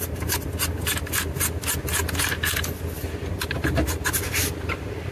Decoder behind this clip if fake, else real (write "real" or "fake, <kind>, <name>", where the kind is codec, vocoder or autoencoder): real